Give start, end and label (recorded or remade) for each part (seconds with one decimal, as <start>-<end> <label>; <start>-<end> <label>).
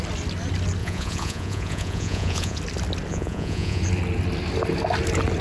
0.0-0.8 recorded; 0.8-2.6 remade; 2.6-3.1 recorded; 3.1-3.8 remade; 3.8-5.4 recorded